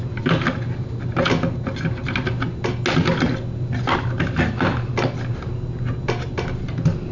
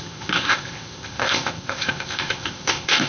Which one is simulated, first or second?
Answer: second